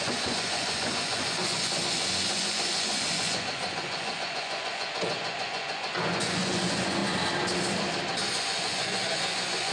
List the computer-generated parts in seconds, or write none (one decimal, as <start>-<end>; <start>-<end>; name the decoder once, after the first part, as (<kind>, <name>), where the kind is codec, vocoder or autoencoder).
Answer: 0.0-7.0 (vocoder, Vocos); 8.3-9.7